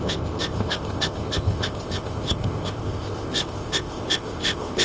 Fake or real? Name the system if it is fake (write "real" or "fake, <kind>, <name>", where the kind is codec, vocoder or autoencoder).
fake, codec, ZipCodec